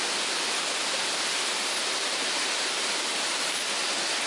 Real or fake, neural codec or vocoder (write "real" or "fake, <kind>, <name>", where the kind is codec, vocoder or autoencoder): real